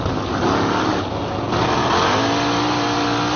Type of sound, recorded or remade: recorded